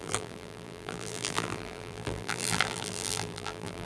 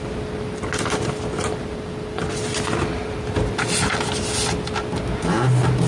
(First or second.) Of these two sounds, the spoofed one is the first